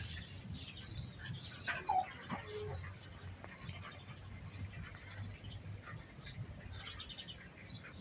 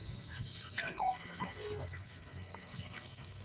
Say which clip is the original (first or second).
first